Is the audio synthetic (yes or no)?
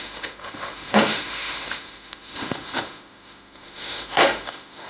yes